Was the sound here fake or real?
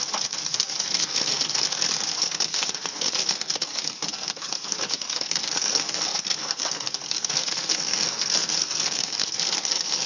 fake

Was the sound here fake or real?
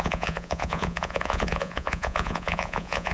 fake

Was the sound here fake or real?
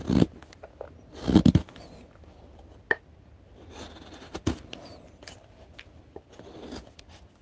real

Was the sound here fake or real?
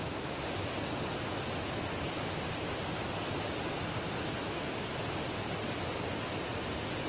real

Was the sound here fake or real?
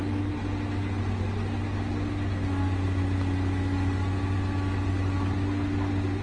real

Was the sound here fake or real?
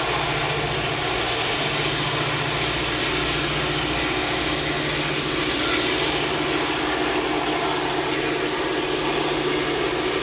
real